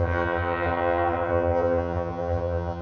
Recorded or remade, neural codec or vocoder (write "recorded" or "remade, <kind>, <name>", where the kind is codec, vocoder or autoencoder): remade, vocoder, HiFi-GAN